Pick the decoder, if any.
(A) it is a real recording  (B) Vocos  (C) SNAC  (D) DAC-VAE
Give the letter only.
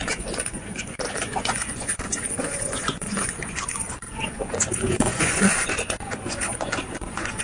B